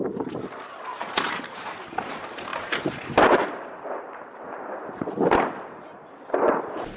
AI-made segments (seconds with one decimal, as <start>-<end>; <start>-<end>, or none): 0.0-7.0